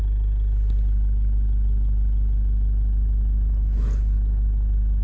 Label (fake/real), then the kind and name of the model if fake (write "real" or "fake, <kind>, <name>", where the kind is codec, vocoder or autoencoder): real